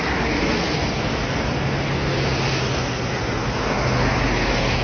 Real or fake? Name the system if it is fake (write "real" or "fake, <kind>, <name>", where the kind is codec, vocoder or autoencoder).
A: real